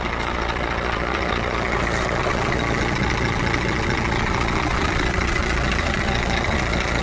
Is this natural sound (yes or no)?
no